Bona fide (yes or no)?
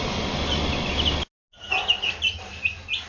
yes